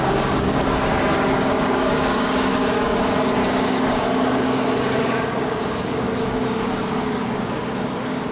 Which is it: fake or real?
fake